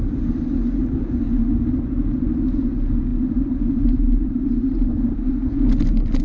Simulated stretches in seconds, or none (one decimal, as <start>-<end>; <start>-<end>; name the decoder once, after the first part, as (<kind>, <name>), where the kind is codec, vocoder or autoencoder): 3.1-5.3 (vocoder, BigVGAN v2)